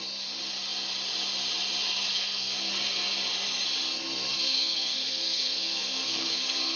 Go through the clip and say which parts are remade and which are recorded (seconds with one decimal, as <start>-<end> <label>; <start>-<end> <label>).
0.0-2.1 recorded; 2.1-2.7 remade; 2.7-4.3 recorded; 4.3-6.8 remade